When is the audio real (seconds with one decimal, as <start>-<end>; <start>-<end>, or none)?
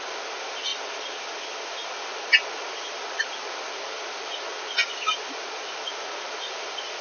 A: 0.0-7.0